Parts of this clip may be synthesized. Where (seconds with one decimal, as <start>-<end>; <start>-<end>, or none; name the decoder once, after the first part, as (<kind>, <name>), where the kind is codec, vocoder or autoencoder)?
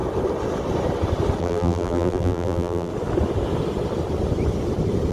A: 1.4-2.9 (vocoder, BigVGAN v2)